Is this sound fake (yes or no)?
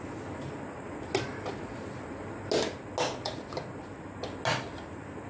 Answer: no